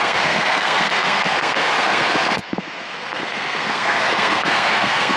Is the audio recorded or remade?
remade